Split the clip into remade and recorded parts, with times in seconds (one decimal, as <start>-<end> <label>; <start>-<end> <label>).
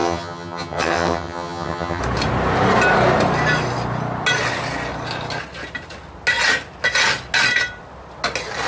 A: 0.0-2.0 remade; 2.0-8.7 recorded